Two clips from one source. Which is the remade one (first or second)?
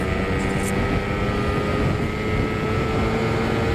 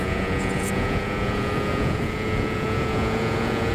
second